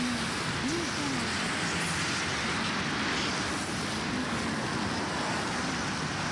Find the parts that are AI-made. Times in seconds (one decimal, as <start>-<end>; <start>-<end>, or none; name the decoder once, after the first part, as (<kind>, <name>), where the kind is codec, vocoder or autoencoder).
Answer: none